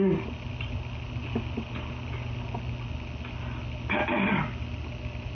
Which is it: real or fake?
real